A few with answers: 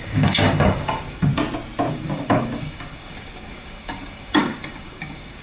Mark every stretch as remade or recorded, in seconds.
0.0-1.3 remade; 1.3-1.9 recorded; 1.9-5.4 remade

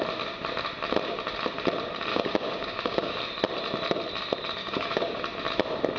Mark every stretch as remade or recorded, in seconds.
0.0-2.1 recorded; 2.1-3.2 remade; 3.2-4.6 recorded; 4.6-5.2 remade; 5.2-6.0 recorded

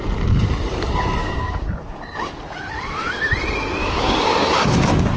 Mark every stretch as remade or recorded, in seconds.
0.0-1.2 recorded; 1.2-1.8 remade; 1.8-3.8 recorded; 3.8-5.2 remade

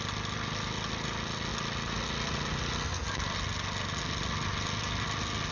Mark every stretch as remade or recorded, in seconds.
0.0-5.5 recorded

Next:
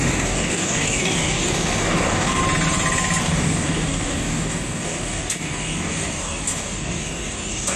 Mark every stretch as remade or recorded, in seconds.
0.0-2.4 remade; 2.4-3.2 recorded; 3.2-7.8 remade

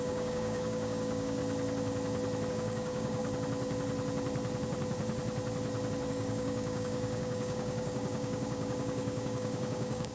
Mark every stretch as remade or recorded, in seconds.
0.0-1.4 remade; 1.4-2.5 recorded; 2.5-3.2 remade; 3.2-6.1 recorded; 6.1-10.1 remade